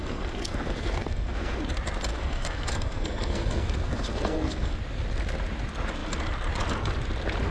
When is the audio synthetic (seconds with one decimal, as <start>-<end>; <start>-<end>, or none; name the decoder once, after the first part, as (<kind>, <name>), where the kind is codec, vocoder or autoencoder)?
0.0-1.6 (codec, SNAC); 2.1-4.8